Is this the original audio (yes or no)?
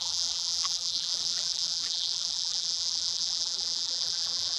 no